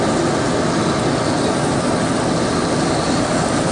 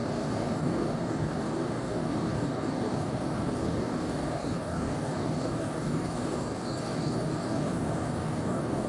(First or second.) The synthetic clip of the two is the second